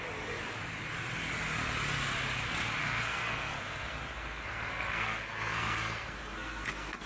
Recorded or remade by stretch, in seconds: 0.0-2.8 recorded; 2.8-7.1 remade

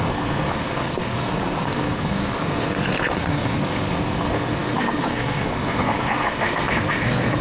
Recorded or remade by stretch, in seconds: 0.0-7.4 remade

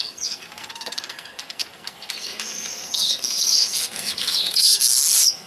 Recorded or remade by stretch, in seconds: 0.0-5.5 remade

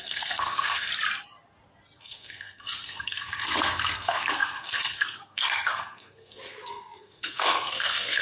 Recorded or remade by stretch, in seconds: 0.0-0.9 remade; 0.9-2.0 recorded; 2.0-8.2 remade

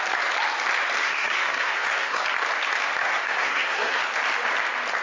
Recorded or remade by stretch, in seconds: 0.0-1.0 recorded; 1.0-2.2 remade; 2.2-3.0 recorded; 3.0-4.0 remade; 4.0-5.0 recorded

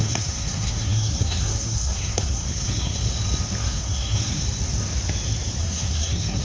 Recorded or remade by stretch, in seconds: 0.0-3.0 remade; 3.0-3.6 recorded; 3.6-4.4 remade; 4.4-5.6 recorded; 5.6-6.4 remade